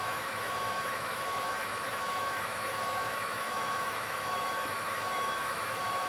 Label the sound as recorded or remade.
remade